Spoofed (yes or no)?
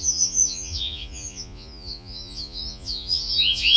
yes